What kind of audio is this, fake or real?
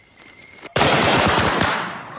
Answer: fake